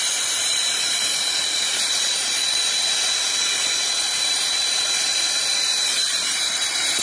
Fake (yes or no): yes